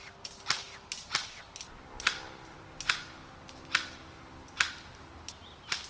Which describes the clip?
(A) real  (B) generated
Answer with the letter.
A